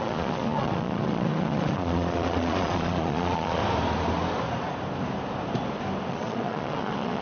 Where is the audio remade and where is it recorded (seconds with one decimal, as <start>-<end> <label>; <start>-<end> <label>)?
0.0-3.6 remade; 3.6-6.1 recorded; 6.1-7.2 remade

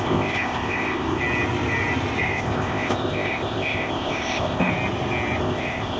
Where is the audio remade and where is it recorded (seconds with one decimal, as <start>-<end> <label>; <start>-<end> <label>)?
0.0-1.2 remade; 1.2-2.2 recorded; 2.2-4.7 remade; 4.7-5.4 recorded; 5.4-6.0 remade

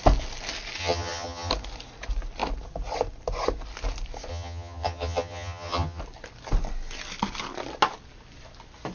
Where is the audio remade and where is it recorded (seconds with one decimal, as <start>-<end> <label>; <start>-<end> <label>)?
0.0-0.8 recorded; 0.8-1.5 remade; 1.5-4.3 recorded; 4.3-6.0 remade; 6.0-8.9 recorded

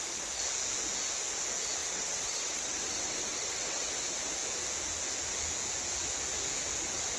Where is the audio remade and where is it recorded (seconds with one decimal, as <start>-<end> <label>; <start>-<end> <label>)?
0.0-1.8 recorded; 1.8-3.9 remade; 3.9-7.2 recorded

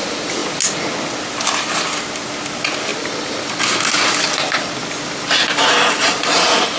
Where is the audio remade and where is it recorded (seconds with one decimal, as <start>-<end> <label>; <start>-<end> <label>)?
0.0-6.8 recorded